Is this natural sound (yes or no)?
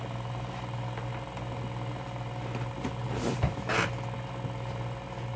yes